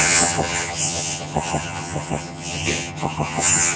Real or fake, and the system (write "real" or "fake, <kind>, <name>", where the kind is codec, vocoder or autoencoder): fake, vocoder, HiFi-GAN